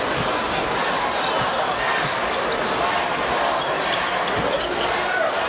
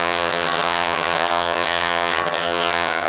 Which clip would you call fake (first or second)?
second